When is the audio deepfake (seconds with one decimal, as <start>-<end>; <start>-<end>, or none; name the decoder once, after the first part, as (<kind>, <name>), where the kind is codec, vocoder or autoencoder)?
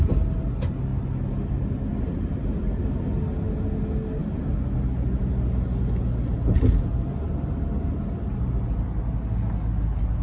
none